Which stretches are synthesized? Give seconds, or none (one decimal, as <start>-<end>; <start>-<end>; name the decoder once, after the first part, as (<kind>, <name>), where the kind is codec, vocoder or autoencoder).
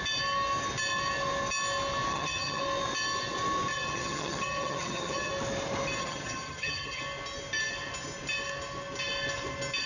2.1-2.6 (vocoder, HiFi-GAN); 3.7-5.3; 6.0-7.0